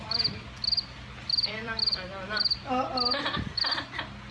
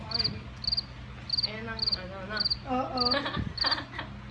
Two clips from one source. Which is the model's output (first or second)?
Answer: first